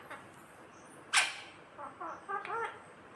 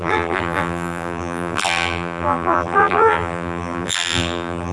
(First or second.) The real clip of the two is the first